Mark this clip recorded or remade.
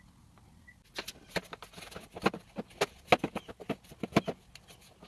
recorded